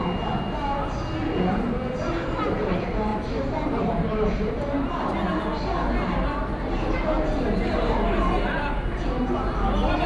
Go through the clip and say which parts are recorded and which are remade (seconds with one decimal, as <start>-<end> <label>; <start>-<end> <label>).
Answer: 0.0-3.1 recorded; 3.1-4.5 remade; 4.5-10.1 recorded